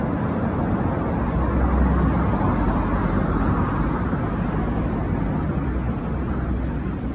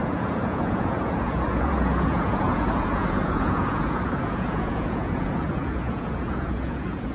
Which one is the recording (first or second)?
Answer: first